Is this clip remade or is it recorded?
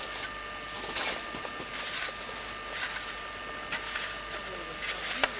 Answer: recorded